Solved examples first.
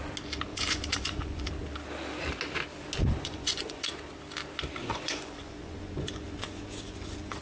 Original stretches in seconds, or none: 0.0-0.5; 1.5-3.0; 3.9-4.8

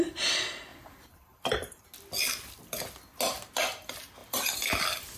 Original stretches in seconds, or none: 0.0-0.7; 1.8-4.2

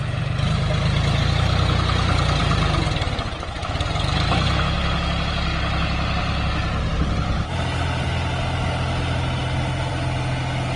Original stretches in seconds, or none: 0.0-10.8

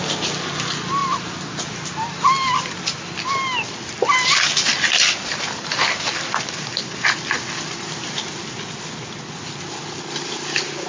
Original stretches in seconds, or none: 0.0-10.9

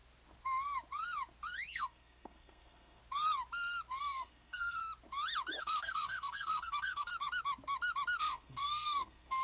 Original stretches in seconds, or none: 0.0-1.7; 3.0-4.0; 4.8-5.6; 7.1-8.2

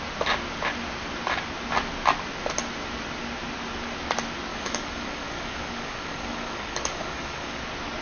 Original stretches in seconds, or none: 0.0-4.5; 7.6-8.0